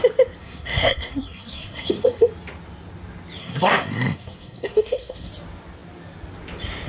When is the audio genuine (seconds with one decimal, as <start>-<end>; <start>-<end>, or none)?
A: 0.0-0.4; 2.3-3.4; 5.3-6.9

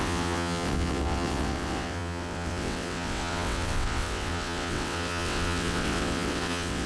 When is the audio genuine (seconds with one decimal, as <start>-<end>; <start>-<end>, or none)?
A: none

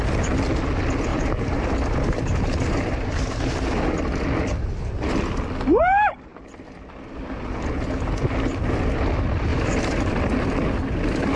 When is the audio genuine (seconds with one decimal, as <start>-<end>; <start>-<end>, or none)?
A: 0.0-1.1; 3.5-9.5; 10.1-11.4

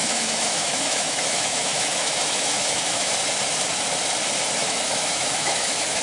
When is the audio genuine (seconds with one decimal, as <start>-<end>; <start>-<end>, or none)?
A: 3.1-4.6